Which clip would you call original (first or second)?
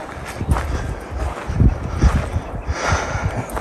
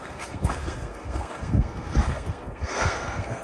first